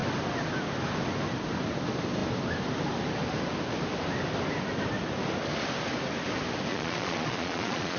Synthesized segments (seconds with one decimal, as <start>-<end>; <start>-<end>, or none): 6.7-8.0